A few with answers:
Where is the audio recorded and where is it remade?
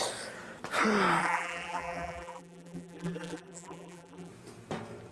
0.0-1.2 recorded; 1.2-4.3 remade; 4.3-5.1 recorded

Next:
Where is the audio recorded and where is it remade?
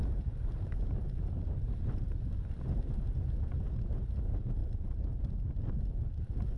0.0-2.8 remade; 2.8-6.6 recorded